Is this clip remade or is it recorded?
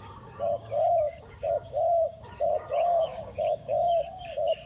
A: remade